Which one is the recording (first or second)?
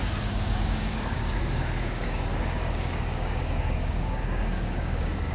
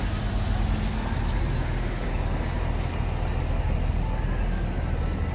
second